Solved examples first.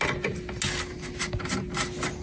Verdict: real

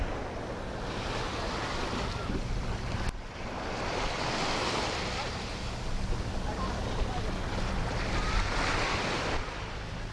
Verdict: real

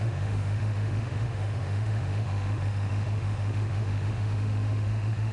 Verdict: fake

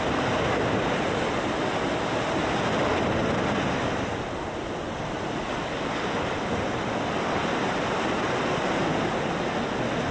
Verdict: real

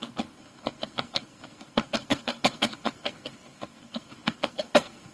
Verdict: fake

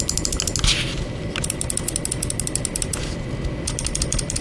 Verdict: real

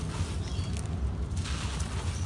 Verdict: real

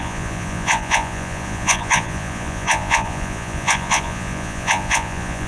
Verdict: fake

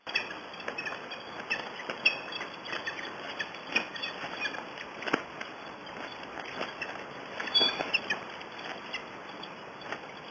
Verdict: real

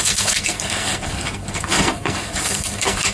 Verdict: fake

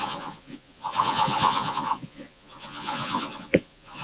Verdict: fake